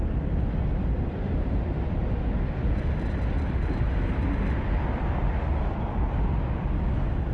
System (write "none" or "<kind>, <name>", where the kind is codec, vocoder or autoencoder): none